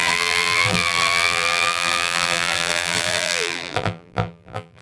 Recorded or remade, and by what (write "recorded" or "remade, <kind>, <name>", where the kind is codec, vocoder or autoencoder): remade, vocoder, BigVGAN v2